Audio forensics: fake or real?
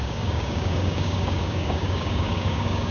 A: fake